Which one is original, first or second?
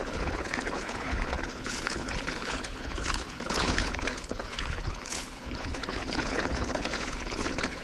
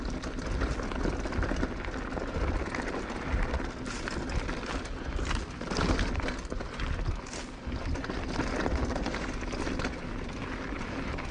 second